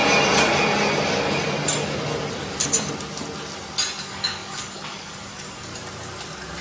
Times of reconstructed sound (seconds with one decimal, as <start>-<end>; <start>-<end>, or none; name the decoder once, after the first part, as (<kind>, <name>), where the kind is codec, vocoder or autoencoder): 4.0-5.7 (codec, DAC)